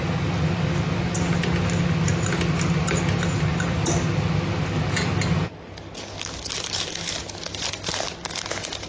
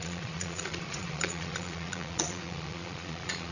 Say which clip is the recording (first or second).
first